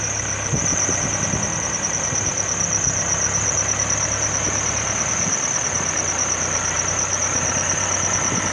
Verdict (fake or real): real